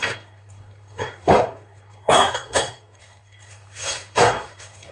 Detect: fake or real fake